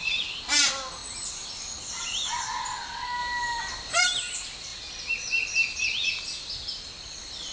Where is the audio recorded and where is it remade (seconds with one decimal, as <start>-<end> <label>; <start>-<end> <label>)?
0.0-7.5 recorded